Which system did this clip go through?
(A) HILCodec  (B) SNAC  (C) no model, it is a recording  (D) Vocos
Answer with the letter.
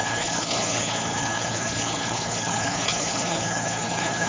A